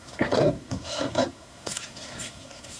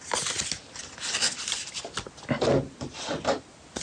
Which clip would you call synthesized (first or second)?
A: first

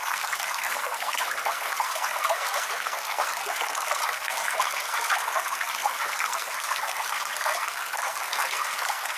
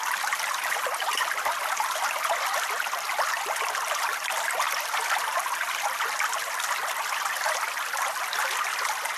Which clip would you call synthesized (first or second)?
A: first